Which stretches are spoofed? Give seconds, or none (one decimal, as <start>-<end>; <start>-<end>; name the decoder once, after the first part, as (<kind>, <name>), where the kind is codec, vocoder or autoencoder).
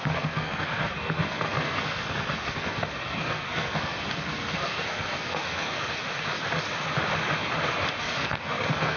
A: 0.0-6.0 (codec, SNAC); 8.0-9.0